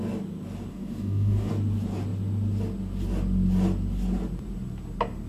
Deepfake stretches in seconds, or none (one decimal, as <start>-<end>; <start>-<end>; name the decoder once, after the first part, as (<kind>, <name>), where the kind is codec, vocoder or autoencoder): 0.7-1.5 (autoencoder, DAC-VAE)